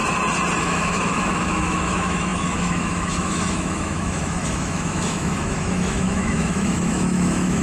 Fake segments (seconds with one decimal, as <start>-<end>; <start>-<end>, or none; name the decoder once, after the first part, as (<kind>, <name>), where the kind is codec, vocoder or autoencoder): 0.6-7.6 (autoencoder, DAC-VAE)